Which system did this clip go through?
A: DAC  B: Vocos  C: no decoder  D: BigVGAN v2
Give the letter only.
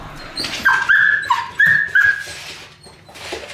C